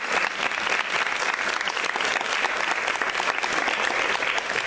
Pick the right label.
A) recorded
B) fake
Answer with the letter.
A